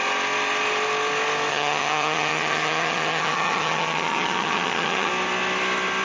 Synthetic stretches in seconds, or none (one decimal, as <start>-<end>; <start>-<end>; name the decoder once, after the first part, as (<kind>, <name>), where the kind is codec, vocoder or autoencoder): 1.5-5.1 (vocoder, HiFi-GAN)

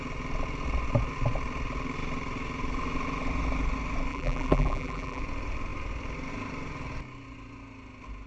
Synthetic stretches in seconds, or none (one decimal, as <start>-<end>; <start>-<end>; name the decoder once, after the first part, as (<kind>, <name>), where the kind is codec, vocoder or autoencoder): 4.1-5.2 (vocoder, BigVGAN v2)

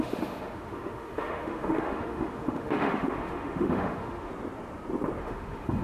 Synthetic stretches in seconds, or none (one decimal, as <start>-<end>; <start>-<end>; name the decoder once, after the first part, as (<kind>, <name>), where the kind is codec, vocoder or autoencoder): 0.0-4.3 (autoencoder, DAC-VAE); 5.2-5.8

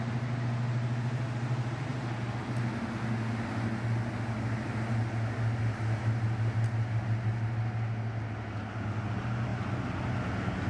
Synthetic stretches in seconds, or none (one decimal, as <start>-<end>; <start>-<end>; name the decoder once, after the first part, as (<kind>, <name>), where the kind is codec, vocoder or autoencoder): none

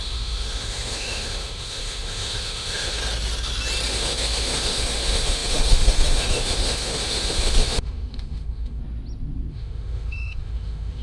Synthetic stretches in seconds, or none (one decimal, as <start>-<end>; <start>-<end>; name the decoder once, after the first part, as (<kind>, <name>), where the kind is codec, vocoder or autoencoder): 0.0-3.0 (autoencoder, DAC-VAE); 3.9-8.8; 9.5-11.0

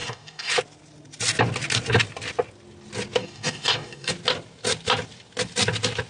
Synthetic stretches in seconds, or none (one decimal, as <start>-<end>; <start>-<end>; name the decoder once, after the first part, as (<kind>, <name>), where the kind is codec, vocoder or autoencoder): 0.0-0.5 (codec, DAC); 3.2-4.1